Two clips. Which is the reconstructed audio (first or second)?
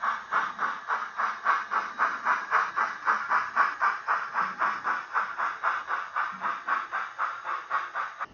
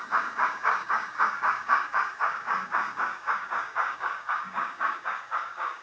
second